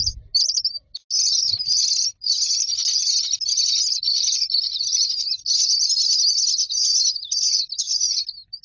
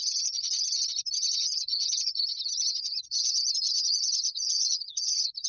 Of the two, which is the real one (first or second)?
first